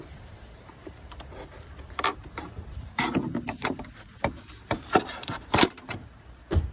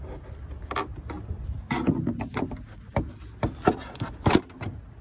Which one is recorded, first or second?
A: second